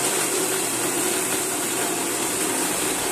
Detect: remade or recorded remade